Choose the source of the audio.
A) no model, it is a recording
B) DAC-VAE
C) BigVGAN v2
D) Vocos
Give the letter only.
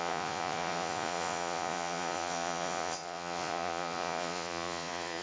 D